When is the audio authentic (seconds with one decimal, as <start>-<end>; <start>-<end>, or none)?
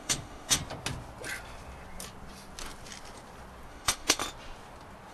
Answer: 0.6-3.7; 4.2-5.1